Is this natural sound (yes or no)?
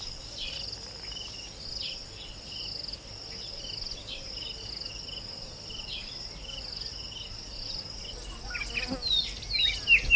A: yes